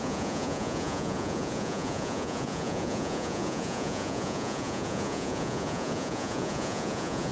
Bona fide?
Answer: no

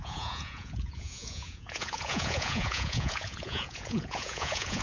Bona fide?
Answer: no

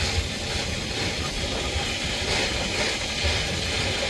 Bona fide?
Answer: yes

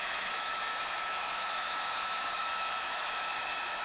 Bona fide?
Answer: no